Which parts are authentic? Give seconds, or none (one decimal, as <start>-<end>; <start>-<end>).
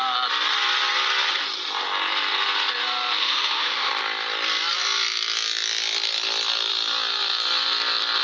0.0-3.2; 3.9-8.2